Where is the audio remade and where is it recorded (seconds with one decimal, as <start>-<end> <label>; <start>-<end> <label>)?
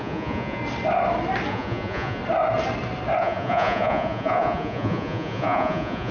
0.0-0.6 remade; 0.6-1.5 recorded; 1.5-2.2 remade; 2.2-3.2 recorded; 3.2-6.1 remade